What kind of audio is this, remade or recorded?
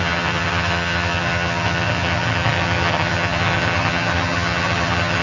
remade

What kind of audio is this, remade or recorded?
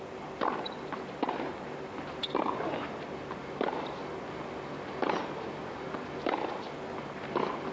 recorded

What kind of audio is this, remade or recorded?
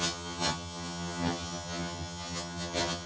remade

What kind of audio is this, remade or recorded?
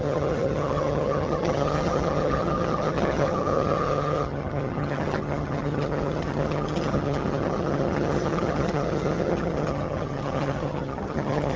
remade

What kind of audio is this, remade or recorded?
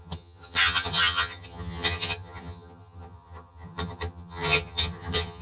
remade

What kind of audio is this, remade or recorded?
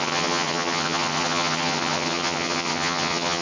remade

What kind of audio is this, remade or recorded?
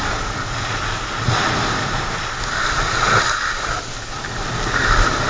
recorded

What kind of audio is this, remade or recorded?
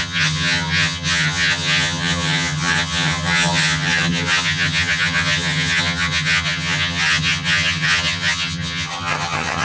remade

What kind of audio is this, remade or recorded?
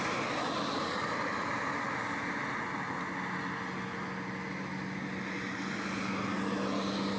recorded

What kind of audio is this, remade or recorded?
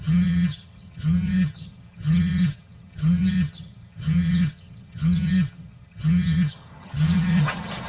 remade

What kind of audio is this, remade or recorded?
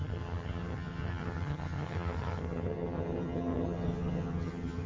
remade